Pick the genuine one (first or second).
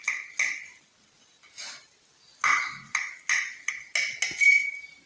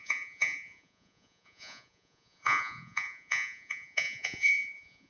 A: first